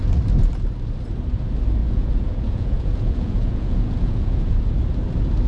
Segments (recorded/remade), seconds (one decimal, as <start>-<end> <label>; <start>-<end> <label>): 0.0-1.8 recorded; 1.8-4.7 remade; 4.7-5.5 recorded